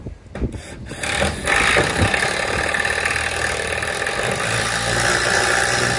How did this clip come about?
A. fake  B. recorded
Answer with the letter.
B